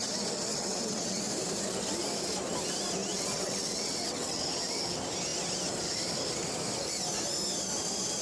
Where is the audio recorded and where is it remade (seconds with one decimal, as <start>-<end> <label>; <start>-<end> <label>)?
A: 0.0-0.5 recorded; 0.5-1.2 remade; 1.2-3.1 recorded; 3.1-4.4 remade; 4.4-8.2 recorded